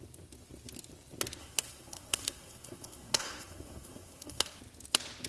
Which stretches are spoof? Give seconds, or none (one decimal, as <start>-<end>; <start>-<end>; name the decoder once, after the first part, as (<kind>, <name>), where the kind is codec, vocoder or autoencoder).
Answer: 1.4-4.6 (codec, SNAC)

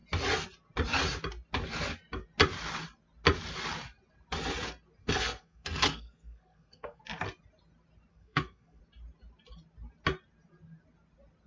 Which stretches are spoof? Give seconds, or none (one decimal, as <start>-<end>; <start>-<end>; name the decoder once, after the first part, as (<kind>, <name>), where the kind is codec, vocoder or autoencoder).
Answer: 5.0-7.0 (codec, SNAC); 8.1-8.8

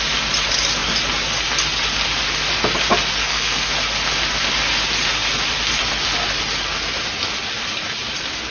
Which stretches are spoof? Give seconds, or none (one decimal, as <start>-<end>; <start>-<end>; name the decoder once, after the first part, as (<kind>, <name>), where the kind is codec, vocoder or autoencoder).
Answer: 3.2-3.7 (codec, SNAC)

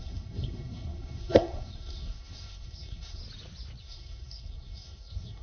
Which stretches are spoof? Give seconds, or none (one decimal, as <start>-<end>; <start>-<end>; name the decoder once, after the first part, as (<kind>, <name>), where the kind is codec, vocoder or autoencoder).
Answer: 0.0-3.2 (codec, SNAC); 3.8-5.4

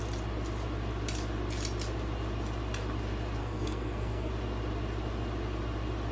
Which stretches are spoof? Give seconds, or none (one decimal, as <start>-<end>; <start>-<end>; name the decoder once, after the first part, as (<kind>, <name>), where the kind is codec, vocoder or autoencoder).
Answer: 3.4-4.3 (codec, SNAC)

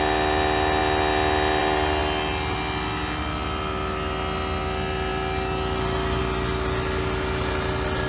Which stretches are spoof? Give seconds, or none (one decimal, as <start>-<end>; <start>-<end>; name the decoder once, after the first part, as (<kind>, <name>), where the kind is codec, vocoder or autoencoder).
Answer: none

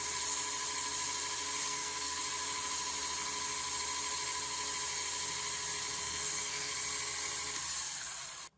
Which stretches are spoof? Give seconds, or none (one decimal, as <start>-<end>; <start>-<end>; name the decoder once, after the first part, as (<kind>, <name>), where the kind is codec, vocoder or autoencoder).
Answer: 1.6-2.2 (codec, SNAC); 6.0-6.7

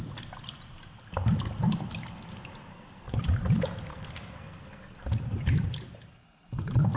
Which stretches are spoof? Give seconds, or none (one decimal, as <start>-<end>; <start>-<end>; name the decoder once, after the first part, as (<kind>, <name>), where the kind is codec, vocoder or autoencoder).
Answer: 2.7-3.2 (codec, SNAC); 3.9-5.0